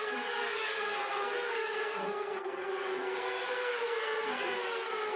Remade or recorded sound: remade